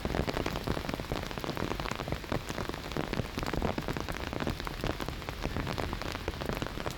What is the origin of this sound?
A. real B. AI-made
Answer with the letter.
B